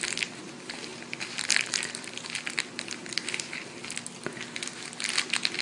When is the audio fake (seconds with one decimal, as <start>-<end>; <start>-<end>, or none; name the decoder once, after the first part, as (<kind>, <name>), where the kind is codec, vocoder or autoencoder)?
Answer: none